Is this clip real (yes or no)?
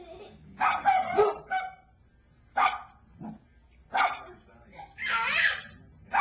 yes